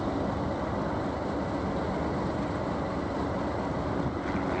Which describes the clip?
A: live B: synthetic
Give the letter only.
A